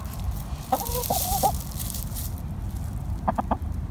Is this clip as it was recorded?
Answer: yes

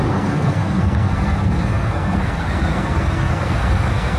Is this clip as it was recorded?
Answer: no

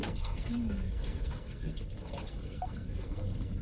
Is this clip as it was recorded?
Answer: no